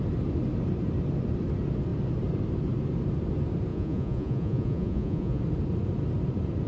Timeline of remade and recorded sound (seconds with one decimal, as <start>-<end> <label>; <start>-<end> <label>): 0.0-3.7 recorded; 3.7-5.4 remade; 5.4-6.7 recorded